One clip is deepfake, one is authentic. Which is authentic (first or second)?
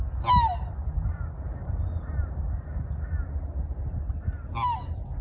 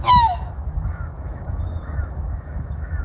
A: first